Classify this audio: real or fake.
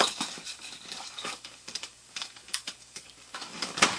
fake